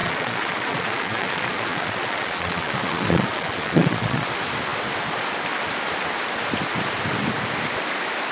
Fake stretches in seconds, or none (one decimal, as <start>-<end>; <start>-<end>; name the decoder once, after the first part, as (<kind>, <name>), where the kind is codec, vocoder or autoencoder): 0.0-4.3 (vocoder, Vocos)